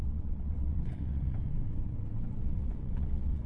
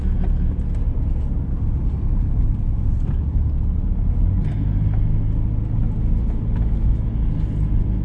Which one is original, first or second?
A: second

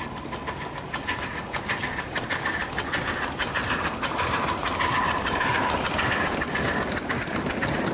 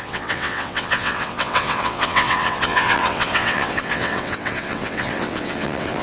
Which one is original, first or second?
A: first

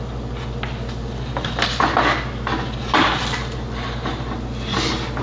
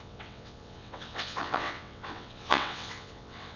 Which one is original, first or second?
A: first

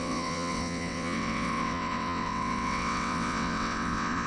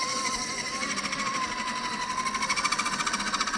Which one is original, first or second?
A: second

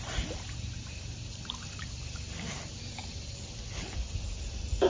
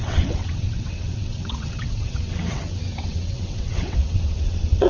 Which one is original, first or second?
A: first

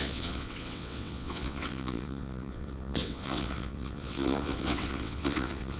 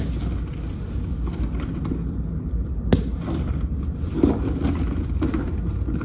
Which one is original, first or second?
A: second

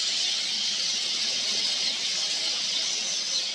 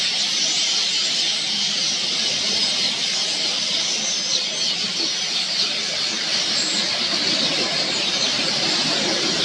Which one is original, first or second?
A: second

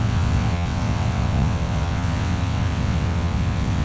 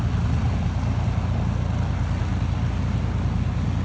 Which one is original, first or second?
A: second